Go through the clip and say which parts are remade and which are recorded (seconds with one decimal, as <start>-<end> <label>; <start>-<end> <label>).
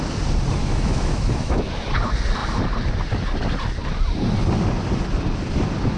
0.0-0.6 recorded; 0.6-1.6 remade; 1.6-6.0 recorded